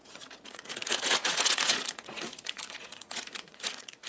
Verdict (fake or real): fake